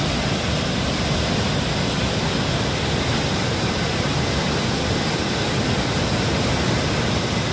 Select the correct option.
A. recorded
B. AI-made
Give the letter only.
A